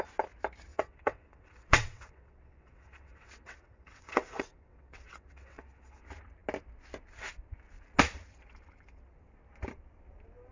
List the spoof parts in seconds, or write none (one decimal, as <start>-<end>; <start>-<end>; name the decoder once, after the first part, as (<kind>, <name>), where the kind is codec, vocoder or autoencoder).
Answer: 0.7-6.0 (vocoder, WaveNeXt)

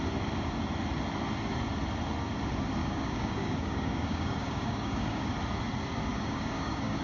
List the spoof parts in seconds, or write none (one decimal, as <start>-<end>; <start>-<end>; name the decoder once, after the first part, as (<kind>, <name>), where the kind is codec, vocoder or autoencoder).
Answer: 2.8-5.3 (codec, DAC); 6.1-7.0

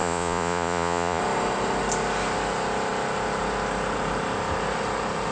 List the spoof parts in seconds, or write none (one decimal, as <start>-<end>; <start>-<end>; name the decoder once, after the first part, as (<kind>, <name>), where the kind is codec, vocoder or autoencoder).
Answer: 0.0-1.2 (vocoder, Vocos)

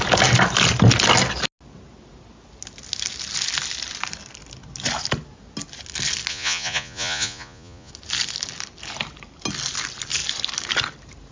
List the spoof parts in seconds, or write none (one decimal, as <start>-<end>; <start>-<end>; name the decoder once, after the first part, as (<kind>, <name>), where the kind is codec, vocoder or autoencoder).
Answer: 6.3-7.9 (vocoder, Vocos)